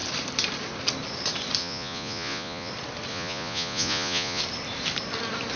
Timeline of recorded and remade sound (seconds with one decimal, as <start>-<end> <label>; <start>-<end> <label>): 0.0-1.6 recorded; 1.6-2.7 remade; 2.7-3.1 recorded; 3.1-4.4 remade; 4.4-5.6 recorded